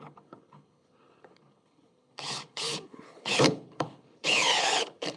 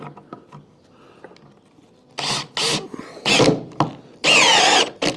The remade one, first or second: first